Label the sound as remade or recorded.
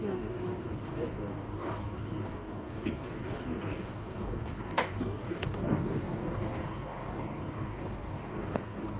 remade